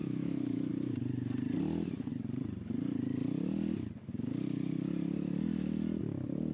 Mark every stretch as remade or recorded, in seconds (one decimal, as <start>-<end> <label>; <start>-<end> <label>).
0.0-0.7 remade; 0.7-6.5 recorded